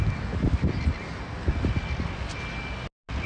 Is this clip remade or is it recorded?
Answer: recorded